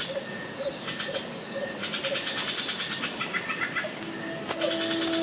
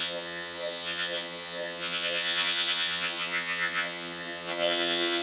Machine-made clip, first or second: second